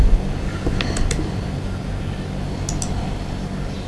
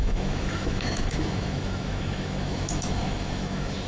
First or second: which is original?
first